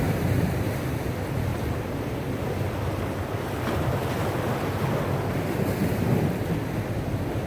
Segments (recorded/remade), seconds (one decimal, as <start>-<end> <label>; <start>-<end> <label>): 0.0-7.5 recorded